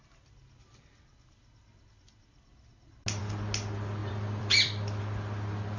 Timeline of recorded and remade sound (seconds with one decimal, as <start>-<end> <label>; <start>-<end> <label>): 0.0-4.0 recorded; 4.0-5.0 remade; 5.0-5.8 recorded